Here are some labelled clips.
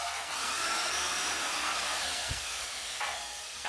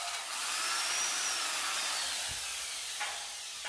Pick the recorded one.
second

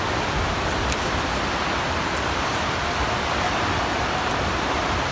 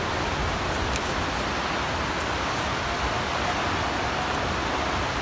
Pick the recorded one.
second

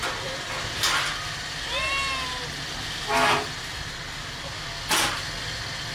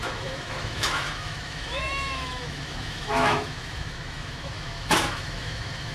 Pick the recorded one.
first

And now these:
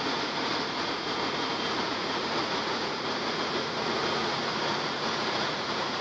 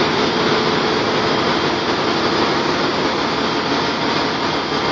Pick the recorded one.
second